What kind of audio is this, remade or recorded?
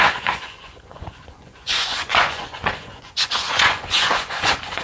remade